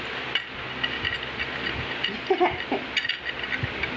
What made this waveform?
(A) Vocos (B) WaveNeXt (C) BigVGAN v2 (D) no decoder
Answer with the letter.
D